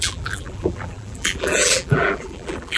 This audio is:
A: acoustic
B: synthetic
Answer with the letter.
B